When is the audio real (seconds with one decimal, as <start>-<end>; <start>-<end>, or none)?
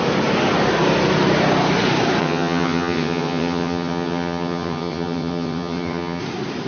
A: 0.0-2.2; 6.2-6.7